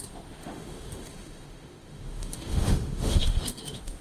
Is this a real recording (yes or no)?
no